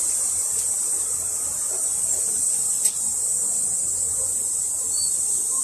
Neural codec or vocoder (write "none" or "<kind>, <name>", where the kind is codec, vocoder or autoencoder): none